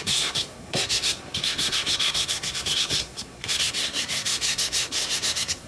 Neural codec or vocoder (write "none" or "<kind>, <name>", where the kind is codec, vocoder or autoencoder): codec, SNAC